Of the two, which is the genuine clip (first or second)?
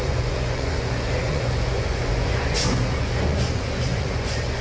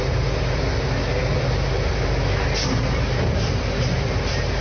second